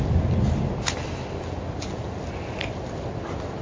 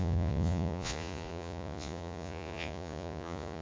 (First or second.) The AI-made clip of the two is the second